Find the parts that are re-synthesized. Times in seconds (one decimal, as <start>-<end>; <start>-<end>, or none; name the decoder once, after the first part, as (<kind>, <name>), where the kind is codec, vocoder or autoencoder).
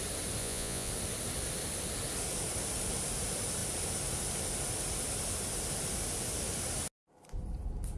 0.4-0.9 (vocoder, Vocos)